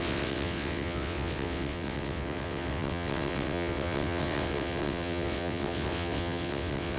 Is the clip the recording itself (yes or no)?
no